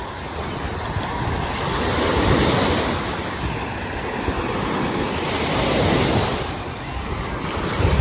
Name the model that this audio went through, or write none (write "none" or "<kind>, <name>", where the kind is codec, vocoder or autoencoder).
none